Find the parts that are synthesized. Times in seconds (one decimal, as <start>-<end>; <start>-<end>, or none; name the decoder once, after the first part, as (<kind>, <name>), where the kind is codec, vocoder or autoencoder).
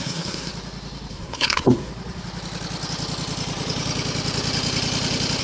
0.0-0.5 (codec, SNAC); 1.1-1.9